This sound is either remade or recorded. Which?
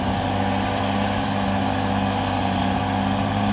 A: recorded